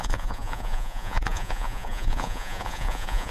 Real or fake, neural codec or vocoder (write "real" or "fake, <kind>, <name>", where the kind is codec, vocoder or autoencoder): fake, vocoder, Vocos